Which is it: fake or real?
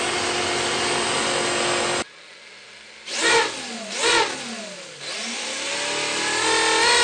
real